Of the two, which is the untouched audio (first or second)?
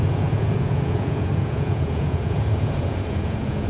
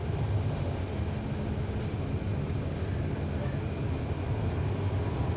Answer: second